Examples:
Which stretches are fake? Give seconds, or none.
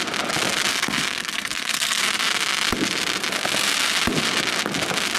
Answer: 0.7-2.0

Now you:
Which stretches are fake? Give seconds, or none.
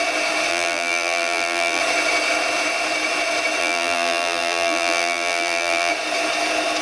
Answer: 0.5-1.8; 3.6-5.9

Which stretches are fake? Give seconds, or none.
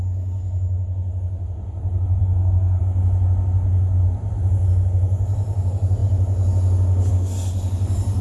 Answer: 2.2-2.8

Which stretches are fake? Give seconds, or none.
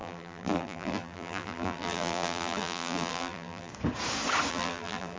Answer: 0.0-3.7; 4.5-5.2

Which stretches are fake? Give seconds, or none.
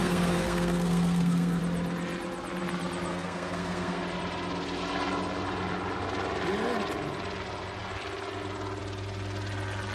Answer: 0.0-1.6; 3.1-4.0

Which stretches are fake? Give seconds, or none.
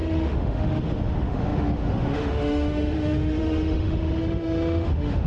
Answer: 0.0-5.3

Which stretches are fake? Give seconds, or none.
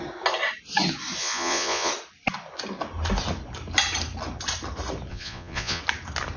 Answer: 1.2-1.9; 5.1-5.8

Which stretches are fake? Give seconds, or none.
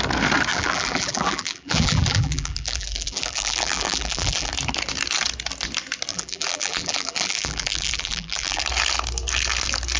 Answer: 0.5-4.5; 6.1-8.6